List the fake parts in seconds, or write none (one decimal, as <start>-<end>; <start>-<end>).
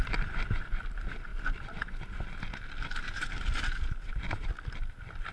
none